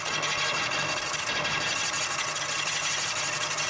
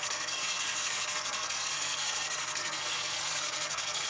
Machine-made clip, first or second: second